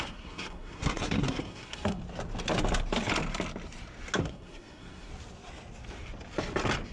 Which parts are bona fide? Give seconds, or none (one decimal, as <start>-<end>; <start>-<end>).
2.0-4.2; 5.1-6.9